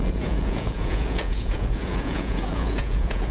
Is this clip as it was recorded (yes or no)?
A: no